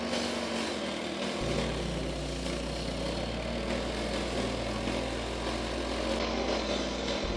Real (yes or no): yes